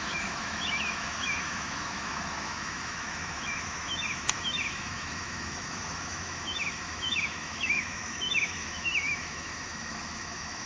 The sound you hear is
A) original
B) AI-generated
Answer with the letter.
B